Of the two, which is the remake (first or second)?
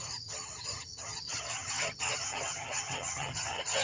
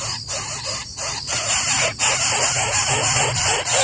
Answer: first